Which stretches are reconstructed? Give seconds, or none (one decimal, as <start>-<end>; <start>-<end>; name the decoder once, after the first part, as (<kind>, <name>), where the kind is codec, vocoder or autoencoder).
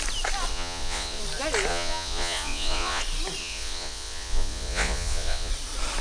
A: 0.5-1.2 (vocoder, Vocos); 1.7-3.0; 3.4-5.5